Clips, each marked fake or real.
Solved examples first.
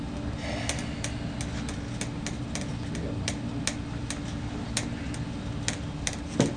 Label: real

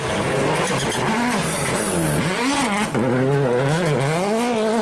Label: real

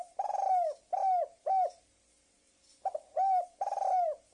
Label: real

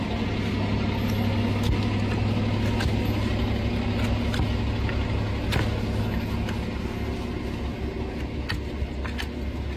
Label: real